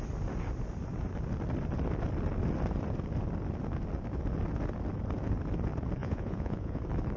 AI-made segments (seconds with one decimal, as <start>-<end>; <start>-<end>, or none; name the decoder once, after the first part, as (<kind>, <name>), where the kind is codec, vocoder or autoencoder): 6.0-6.8 (vocoder, Vocos)